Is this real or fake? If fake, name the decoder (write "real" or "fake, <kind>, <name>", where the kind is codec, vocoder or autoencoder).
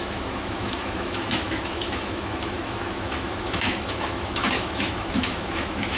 fake, autoencoder, DAC-VAE